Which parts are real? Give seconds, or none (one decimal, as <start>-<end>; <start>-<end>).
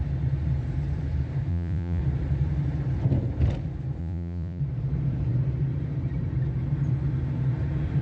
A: 0.0-1.5; 2.0-4.0; 4.6-8.0